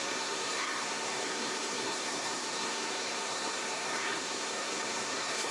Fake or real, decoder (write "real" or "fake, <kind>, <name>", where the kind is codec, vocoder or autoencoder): fake, codec, SNAC